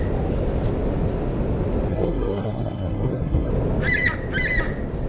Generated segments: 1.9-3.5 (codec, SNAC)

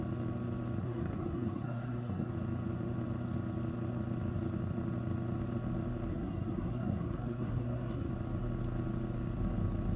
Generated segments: 0.8-2.3 (codec, SNAC); 6.1-8.1